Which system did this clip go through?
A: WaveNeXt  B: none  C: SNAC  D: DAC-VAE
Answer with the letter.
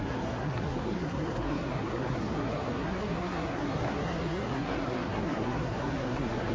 C